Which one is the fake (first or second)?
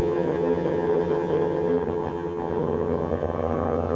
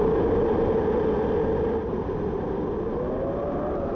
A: first